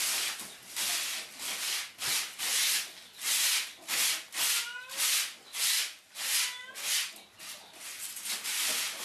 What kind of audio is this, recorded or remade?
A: recorded